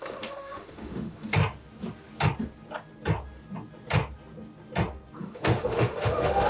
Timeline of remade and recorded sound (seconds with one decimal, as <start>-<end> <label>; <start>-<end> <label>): 0.0-1.4 remade; 1.4-5.2 recorded; 5.2-6.5 remade